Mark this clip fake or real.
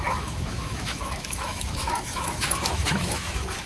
fake